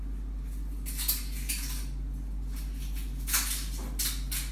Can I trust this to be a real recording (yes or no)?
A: yes